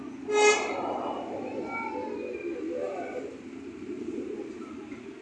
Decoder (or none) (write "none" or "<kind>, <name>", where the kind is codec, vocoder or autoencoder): none